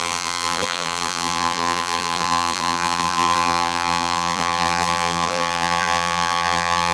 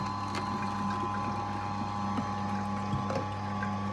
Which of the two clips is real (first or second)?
second